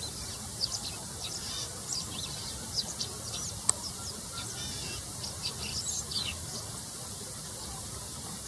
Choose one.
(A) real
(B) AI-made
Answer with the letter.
A